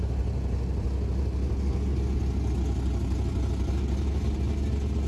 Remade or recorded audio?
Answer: recorded